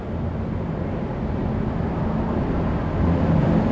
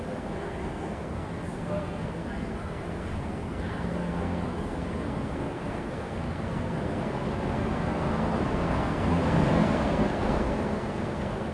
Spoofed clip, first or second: second